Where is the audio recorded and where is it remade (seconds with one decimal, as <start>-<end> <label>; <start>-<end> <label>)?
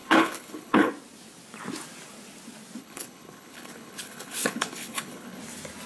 0.0-0.9 remade; 0.9-2.8 recorded; 2.8-5.4 remade; 5.4-5.9 recorded